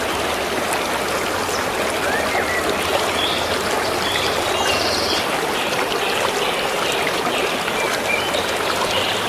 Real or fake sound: real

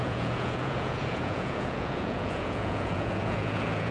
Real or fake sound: fake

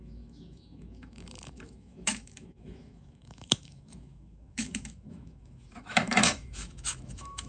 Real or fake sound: fake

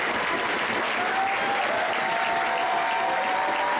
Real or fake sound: real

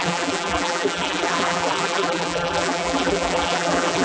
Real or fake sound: fake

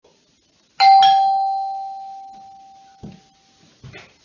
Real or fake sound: real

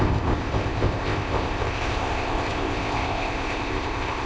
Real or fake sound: fake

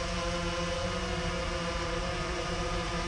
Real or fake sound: fake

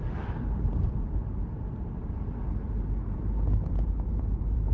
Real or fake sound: fake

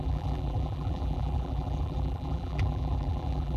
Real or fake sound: fake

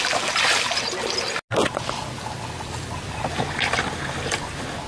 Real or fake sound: real